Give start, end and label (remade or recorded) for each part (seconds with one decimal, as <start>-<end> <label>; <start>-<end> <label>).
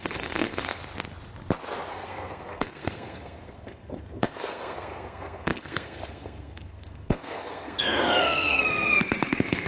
0.0-0.8 remade; 0.8-1.9 recorded; 1.9-9.7 remade